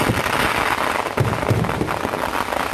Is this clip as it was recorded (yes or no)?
yes